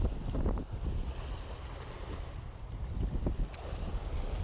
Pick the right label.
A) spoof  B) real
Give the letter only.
B